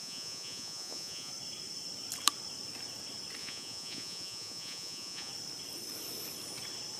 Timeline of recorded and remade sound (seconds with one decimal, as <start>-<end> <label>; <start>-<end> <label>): 0.0-1.3 remade; 1.3-3.4 recorded; 3.4-5.3 remade; 5.3-7.0 recorded